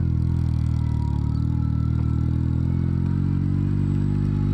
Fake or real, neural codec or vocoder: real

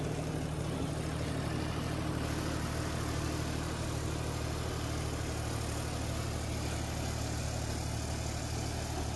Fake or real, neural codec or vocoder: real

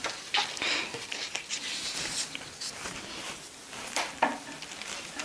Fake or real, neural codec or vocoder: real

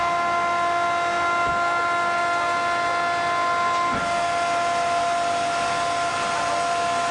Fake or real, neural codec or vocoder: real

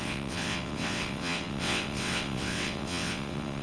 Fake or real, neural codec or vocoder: fake, vocoder, WaveNeXt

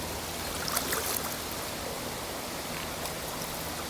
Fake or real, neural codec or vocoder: real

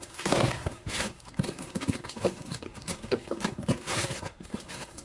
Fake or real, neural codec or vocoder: fake, codec, SNAC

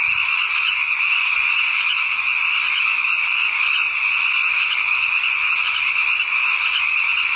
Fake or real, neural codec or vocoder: fake, vocoder, Vocos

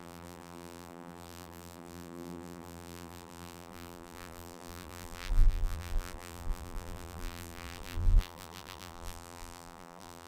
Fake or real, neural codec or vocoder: fake, vocoder, BigVGAN v2